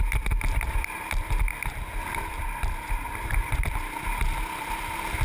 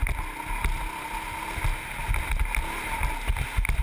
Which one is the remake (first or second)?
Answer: first